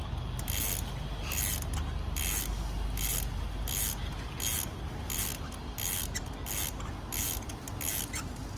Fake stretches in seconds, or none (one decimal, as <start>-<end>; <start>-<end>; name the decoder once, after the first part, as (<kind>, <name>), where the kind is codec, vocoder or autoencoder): none